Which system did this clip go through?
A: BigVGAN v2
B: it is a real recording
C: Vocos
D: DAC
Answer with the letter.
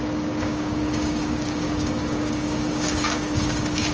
D